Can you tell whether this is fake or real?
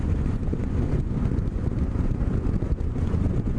fake